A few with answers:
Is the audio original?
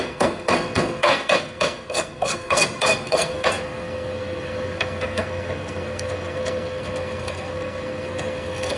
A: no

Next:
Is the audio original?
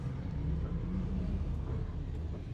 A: yes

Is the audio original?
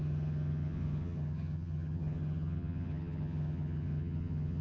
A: no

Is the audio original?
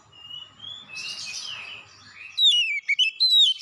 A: yes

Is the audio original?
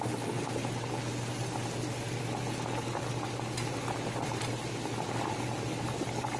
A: yes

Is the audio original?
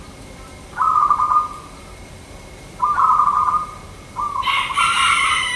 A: no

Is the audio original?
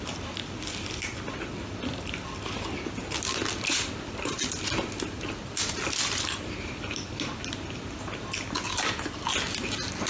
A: yes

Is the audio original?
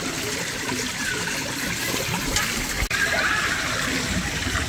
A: yes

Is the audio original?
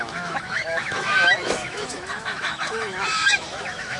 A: no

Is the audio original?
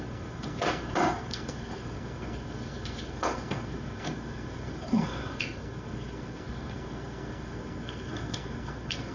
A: no